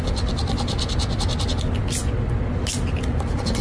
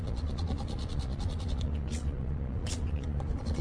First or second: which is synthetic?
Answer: second